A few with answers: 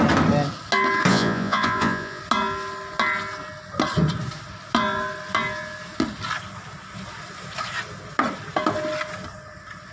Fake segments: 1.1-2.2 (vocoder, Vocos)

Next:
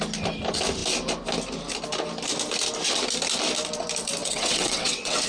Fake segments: 4.2-5.3 (vocoder, WaveNeXt)

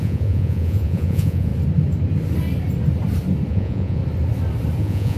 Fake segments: 0.0-1.5 (vocoder, Vocos); 3.5-4.0; 4.8-5.2

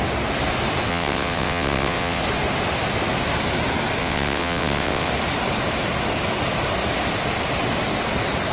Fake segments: 0.9-2.2 (vocoder, WaveNeXt); 4.0-5.1

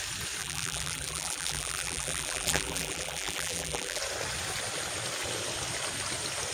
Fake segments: 0.4-4.0 (vocoder, BigVGAN v2)